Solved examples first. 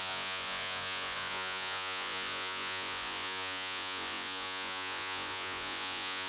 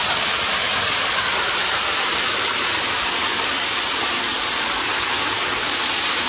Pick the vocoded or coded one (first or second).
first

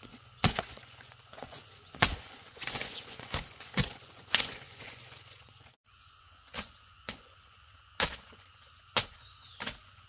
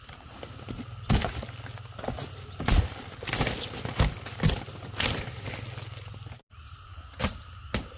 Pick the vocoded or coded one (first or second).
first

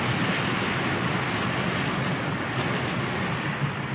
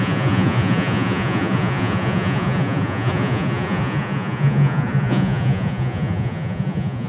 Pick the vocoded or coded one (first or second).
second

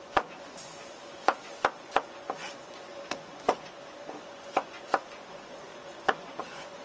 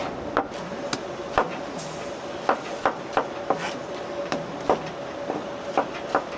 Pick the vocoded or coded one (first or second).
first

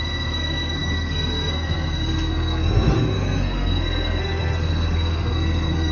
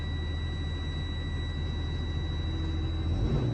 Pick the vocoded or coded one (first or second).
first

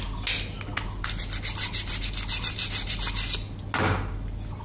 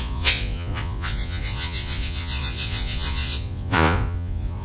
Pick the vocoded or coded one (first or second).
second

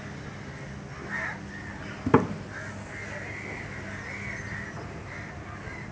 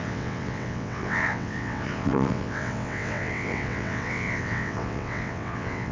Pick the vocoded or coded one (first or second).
second